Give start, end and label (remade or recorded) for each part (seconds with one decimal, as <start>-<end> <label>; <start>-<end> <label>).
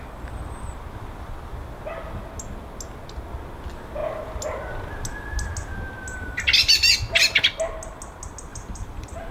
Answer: 0.0-8.5 recorded; 8.5-9.3 remade